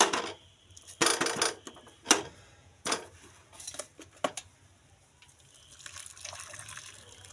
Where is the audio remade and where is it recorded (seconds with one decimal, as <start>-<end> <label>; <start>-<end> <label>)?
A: 0.0-2.6 recorded; 2.6-3.1 remade; 3.1-7.3 recorded